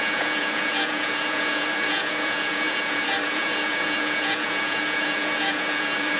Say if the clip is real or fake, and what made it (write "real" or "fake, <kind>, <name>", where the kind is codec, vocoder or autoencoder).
fake, vocoder, Vocos